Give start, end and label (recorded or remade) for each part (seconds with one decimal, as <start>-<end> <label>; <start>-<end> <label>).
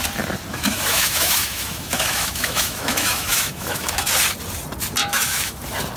0.0-0.5 recorded; 0.5-4.1 remade; 4.1-5.0 recorded; 5.0-5.6 remade; 5.6-6.0 recorded